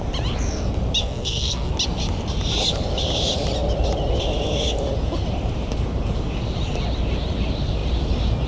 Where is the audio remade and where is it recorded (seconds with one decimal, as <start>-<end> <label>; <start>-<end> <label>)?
0.0-1.0 recorded; 1.0-1.7 remade; 1.7-8.5 recorded